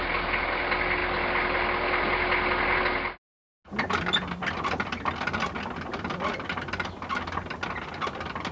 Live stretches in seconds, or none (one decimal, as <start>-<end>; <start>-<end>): 0.0-8.5

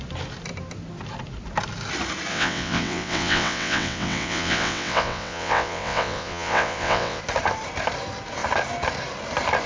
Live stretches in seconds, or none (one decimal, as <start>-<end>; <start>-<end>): 0.0-2.3; 7.2-9.7